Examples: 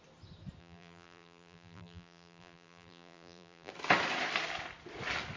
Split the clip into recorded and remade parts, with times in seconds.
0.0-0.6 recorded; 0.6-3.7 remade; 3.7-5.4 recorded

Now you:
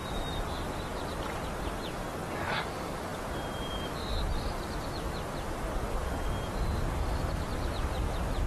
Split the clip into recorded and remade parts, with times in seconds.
0.0-3.1 remade; 3.1-7.3 recorded; 7.3-8.5 remade

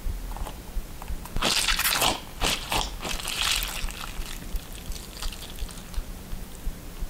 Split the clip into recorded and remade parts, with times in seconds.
0.0-2.1 recorded; 2.1-3.5 remade; 3.5-7.1 recorded

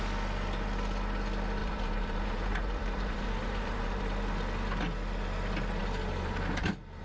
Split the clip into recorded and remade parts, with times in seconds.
0.0-1.6 recorded; 1.6-4.0 remade; 4.0-7.0 recorded

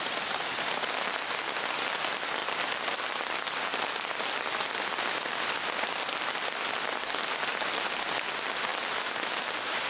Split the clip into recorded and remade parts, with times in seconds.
0.0-2.4 recorded; 2.4-4.2 remade; 4.2-9.9 recorded

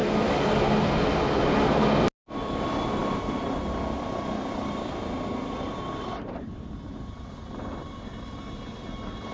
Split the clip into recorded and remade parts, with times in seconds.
0.0-3.0 recorded; 3.0-7.2 remade; 7.2-9.3 recorded

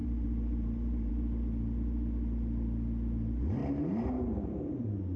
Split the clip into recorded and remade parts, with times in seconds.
0.0-1.1 remade; 1.1-3.6 recorded; 3.6-5.2 remade

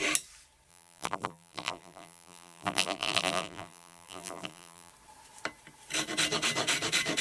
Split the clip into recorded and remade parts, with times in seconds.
0.0-0.7 recorded; 0.7-4.9 remade; 4.9-7.2 recorded